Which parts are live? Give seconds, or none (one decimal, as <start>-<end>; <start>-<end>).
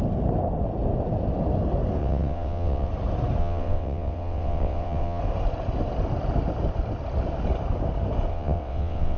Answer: 0.0-2.0; 2.9-3.4; 5.2-8.3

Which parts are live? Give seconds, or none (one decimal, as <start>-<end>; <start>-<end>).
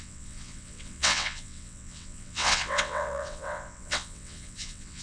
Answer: none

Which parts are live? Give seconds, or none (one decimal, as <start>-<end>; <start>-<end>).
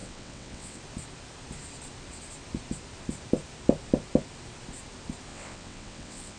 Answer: 0.8-5.3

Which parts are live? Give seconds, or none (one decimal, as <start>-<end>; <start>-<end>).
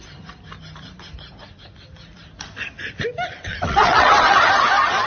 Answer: 0.0-3.3; 4.4-5.1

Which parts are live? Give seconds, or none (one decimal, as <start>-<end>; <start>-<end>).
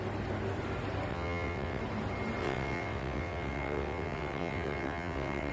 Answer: 0.0-1.1; 1.8-2.4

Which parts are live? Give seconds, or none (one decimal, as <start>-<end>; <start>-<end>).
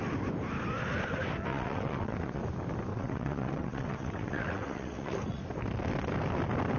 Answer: 0.0-1.5; 2.4-2.9; 5.4-6.8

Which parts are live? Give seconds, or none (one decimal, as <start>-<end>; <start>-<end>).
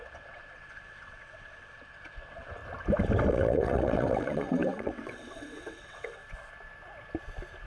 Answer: 2.6-3.3; 6.2-7.7